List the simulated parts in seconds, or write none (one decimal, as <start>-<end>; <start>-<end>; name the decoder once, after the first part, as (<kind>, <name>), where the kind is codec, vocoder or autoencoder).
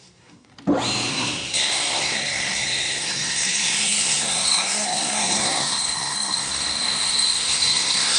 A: 0.0-0.5 (codec, SNAC); 1.1-8.2